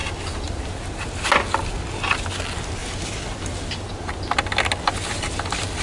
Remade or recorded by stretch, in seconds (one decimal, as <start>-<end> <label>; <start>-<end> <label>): 0.0-0.7 remade; 0.7-2.8 recorded; 2.8-3.9 remade; 3.9-5.8 recorded